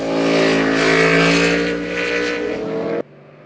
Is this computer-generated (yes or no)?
no